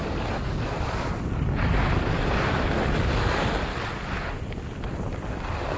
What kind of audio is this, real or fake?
real